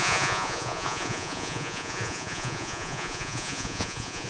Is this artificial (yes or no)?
yes